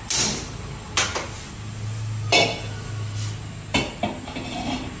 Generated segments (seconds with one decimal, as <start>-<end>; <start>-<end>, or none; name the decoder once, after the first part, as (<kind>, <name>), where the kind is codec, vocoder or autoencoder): none